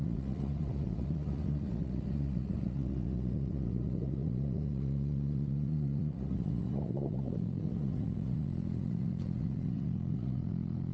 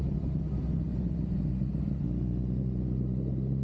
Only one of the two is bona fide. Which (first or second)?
second